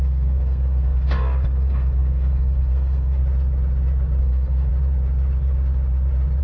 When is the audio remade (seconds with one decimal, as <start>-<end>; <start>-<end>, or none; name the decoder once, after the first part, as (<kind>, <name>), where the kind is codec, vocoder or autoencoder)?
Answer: 0.0-3.2 (codec, SNAC); 4.2-4.7